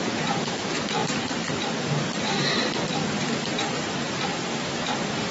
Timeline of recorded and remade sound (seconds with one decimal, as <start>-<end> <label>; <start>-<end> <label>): 0.0-1.0 recorded; 1.0-4.2 remade; 4.2-5.3 recorded